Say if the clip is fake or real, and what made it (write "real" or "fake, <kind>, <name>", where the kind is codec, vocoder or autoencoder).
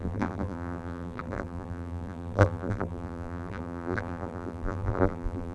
fake, vocoder, BigVGAN v2